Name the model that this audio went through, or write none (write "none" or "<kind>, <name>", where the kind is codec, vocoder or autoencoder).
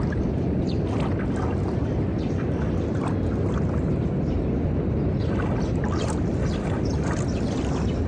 none